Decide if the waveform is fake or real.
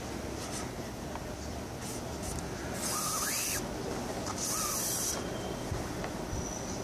real